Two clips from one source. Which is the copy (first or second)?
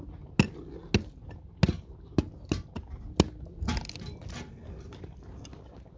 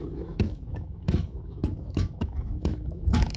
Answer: second